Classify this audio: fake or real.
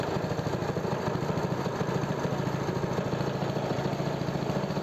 fake